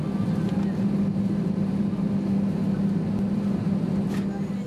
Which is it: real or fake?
real